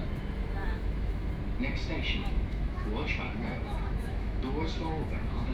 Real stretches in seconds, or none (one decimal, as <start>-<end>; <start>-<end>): 0.0-0.6; 1.3-2.2